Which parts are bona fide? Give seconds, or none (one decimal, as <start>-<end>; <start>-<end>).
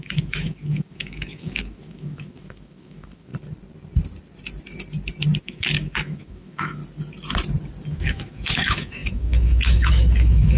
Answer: 3.3-5.4; 6.8-7.9